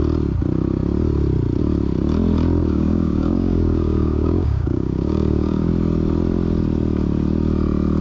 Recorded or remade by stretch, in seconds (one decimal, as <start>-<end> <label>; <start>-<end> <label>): 0.0-2.6 recorded; 2.6-5.7 remade; 5.7-8.0 recorded